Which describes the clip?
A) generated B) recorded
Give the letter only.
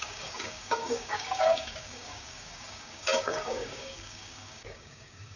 A